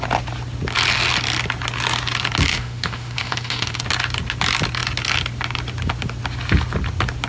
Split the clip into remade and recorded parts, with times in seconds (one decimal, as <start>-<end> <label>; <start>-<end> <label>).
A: 0.0-2.5 recorded; 2.5-3.8 remade; 3.8-7.3 recorded